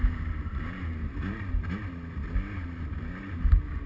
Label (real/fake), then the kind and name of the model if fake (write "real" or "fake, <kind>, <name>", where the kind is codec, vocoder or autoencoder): fake, vocoder, BigVGAN v2